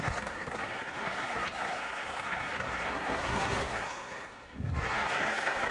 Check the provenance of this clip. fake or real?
fake